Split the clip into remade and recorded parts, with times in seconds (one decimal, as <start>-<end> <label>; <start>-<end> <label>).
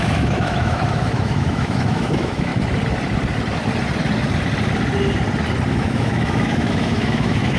0.0-2.5 remade; 2.5-5.7 recorded; 5.7-7.6 remade